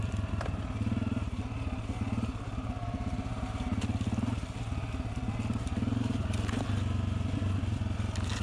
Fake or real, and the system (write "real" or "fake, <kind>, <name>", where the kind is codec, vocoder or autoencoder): real